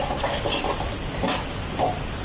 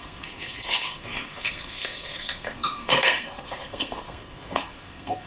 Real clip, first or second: first